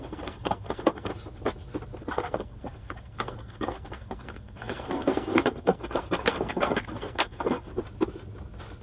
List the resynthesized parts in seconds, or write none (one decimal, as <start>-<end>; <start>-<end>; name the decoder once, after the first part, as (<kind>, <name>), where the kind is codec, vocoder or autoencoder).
0.0-1.1 (codec, SNAC); 2.1-7.8